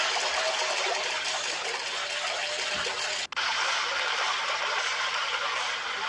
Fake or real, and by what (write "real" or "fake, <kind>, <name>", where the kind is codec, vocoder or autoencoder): real